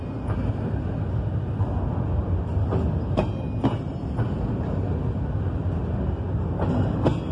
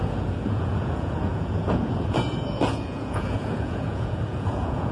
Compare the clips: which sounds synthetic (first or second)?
second